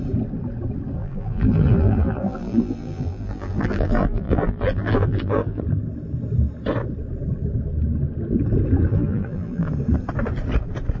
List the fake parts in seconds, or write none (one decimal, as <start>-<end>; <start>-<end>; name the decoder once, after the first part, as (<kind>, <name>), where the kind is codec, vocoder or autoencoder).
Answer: 1.0-5.6 (vocoder, BigVGAN v2); 8.9-9.7